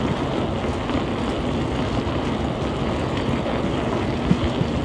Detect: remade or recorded recorded